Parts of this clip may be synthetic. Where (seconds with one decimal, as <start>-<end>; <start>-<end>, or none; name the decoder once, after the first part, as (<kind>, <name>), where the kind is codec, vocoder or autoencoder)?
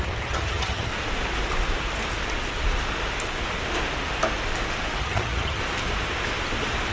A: 0.0-0.9 (vocoder, HiFi-GAN); 5.0-5.6